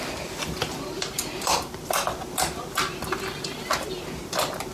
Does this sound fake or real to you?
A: real